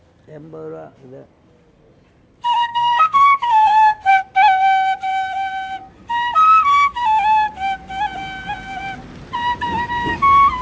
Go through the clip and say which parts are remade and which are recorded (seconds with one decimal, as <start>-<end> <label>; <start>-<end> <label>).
0.0-2.7 recorded; 2.7-4.1 remade; 4.1-10.6 recorded